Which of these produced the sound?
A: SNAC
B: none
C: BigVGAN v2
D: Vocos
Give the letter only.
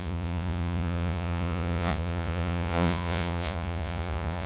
D